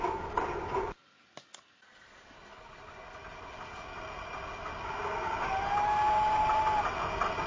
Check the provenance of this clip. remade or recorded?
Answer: recorded